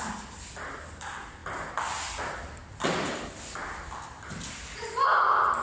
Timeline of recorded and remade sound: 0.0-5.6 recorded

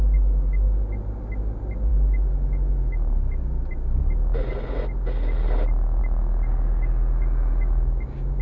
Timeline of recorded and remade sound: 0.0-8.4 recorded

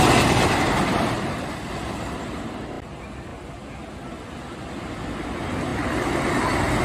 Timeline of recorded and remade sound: 0.0-6.8 recorded

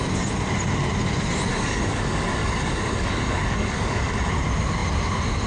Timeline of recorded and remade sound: 0.0-1.5 recorded; 1.5-4.3 remade; 4.3-5.5 recorded